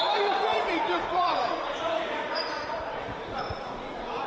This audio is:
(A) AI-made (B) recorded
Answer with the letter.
A